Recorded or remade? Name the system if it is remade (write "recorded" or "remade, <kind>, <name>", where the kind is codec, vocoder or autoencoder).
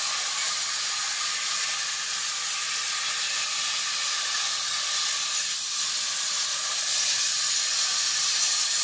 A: recorded